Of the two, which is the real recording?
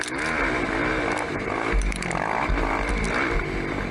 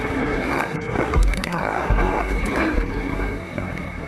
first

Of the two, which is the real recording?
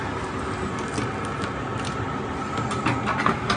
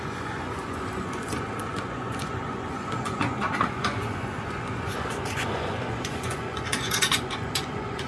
first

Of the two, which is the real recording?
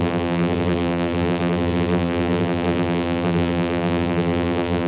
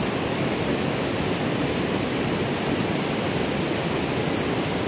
second